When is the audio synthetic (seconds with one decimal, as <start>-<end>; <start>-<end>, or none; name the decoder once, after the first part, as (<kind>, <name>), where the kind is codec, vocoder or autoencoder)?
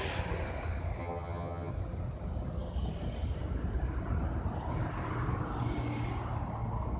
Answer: 1.0-1.7 (vocoder, HiFi-GAN)